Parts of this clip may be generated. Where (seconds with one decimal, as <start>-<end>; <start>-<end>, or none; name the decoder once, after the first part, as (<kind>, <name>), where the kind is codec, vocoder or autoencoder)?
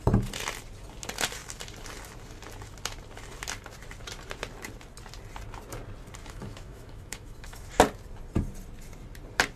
6.2-7.7 (autoencoder, DAC-VAE)